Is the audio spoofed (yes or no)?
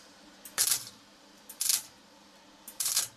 yes